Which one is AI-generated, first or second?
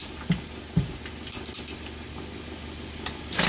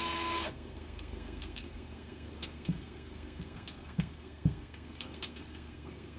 second